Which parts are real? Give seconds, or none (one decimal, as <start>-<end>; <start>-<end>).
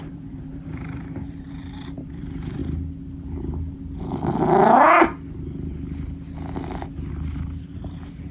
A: 2.6-7.1